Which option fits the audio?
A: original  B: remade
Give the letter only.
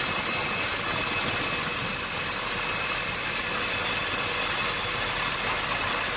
A